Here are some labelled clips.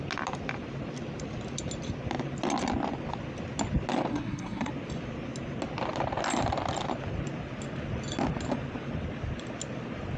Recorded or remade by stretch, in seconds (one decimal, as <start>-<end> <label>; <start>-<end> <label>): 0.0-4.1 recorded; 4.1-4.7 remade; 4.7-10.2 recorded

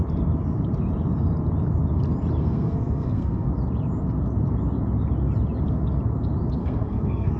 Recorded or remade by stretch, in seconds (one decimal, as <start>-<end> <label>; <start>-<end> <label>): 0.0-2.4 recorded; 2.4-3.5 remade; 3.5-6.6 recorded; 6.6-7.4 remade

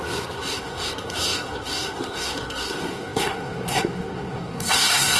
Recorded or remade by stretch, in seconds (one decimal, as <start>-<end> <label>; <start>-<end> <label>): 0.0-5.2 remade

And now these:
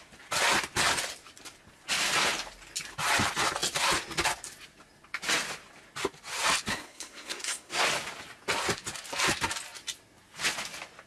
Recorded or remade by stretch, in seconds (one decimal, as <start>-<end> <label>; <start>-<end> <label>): 0.0-6.7 recorded; 6.7-7.8 remade; 7.8-11.1 recorded

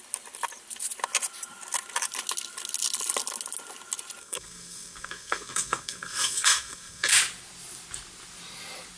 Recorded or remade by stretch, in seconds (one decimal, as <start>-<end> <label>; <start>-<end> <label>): 0.0-4.2 recorded; 4.2-7.1 remade; 7.1-9.0 recorded

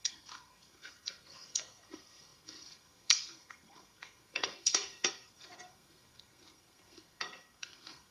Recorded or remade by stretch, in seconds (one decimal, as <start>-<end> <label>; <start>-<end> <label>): 0.0-8.1 remade